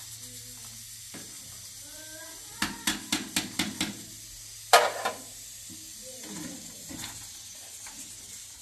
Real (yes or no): yes